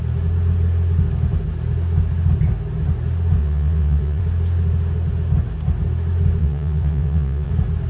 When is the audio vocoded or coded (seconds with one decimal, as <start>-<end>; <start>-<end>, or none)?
3.4-4.2; 6.4-7.5